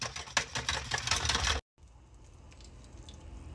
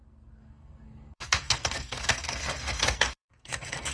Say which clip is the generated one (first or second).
second